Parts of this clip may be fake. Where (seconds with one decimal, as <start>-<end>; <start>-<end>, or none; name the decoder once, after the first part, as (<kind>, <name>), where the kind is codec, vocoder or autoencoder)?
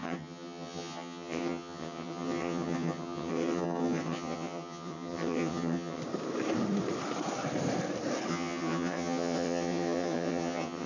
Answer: 0.0-6.0 (vocoder, HiFi-GAN); 8.3-10.9